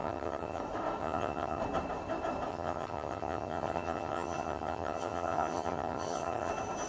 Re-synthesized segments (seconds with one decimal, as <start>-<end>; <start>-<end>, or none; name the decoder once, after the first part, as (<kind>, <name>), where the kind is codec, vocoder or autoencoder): 0.0-0.6 (vocoder, HiFi-GAN); 1.0-1.6; 2.5-6.5